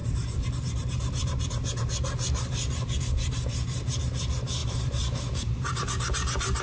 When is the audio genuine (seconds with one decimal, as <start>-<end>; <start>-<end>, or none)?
4.0-4.6